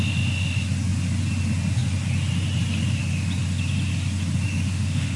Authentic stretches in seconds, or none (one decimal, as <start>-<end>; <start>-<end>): 0.0-4.5